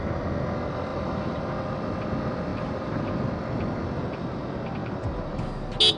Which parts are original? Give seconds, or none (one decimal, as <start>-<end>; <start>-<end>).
0.0-0.9; 1.4-2.5; 3.0-4.8; 5.4-6.0